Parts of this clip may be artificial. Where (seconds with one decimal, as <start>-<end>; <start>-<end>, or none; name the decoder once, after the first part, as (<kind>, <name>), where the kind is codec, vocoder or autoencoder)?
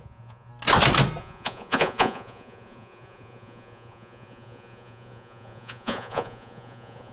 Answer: 0.0-0.5 (vocoder, Vocos); 1.2-7.1